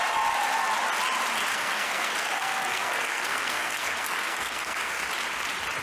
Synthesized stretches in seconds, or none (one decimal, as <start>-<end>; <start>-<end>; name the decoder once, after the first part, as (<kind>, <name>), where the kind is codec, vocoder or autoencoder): 1.5-5.0 (codec, SNAC)